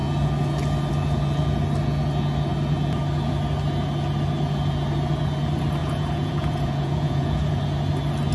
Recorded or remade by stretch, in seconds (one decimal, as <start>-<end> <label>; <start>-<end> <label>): 0.0-5.8 recorded; 5.8-7.6 remade; 7.6-8.3 recorded